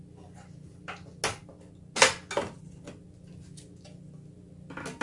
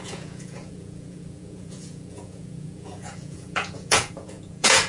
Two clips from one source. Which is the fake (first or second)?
second